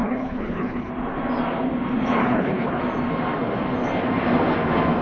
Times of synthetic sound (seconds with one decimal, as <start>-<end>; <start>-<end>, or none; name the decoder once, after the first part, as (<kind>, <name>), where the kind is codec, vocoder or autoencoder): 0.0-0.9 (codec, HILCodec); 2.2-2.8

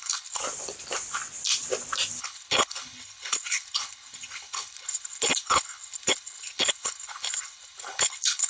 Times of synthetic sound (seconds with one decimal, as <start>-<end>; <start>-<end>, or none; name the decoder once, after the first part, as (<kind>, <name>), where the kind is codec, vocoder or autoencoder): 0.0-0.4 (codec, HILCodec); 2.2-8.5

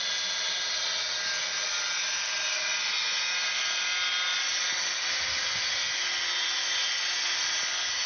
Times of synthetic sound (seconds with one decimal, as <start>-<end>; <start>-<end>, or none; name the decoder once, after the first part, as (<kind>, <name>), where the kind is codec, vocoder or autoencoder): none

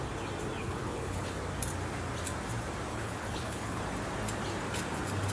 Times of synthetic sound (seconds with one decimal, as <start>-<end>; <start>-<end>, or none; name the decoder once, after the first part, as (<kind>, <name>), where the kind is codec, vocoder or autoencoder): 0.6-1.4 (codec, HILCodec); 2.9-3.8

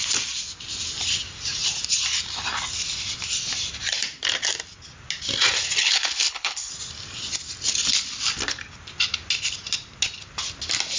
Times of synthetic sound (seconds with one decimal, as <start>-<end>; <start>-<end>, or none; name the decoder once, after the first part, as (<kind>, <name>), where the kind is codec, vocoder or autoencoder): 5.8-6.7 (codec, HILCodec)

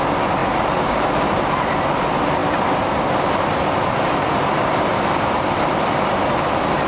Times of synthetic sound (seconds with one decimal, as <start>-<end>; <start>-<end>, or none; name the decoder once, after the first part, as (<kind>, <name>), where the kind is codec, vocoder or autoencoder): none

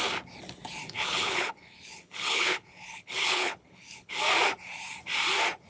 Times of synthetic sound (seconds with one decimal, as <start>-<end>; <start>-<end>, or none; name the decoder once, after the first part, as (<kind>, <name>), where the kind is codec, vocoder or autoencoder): 0.8-4.2 (codec, HILCodec)